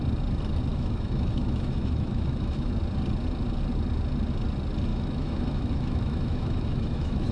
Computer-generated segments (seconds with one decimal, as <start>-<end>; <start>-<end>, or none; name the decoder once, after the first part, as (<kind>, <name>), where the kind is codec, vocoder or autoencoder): 0.7-2.7 (autoencoder, DAC-VAE); 4.9-7.3